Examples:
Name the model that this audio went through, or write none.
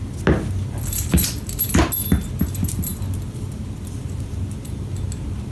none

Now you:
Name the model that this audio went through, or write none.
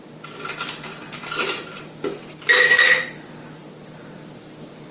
none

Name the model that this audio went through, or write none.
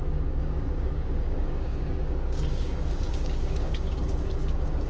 codec, DAC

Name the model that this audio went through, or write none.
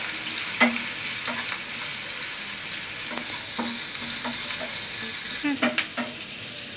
none